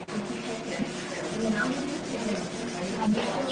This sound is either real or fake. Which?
real